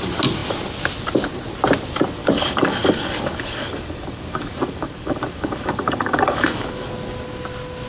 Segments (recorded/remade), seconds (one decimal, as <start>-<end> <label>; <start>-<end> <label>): 0.0-2.2 recorded; 2.2-6.9 remade; 6.9-7.9 recorded